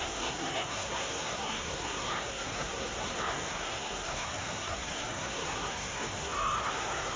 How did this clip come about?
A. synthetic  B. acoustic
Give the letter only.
A